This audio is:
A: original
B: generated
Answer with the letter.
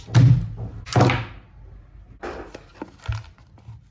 A